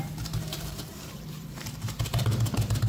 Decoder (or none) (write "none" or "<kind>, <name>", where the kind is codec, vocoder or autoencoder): vocoder, BigVGAN v2